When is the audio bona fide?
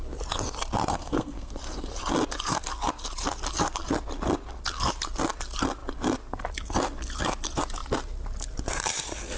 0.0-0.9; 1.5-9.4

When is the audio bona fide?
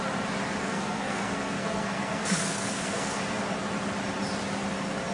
0.0-0.6; 3.2-5.1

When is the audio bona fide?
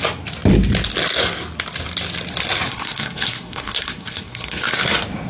0.0-2.7; 4.8-5.3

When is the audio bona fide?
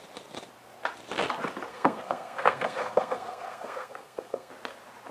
0.0-1.7; 4.5-5.1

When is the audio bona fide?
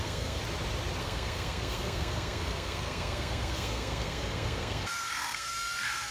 0.4-1.0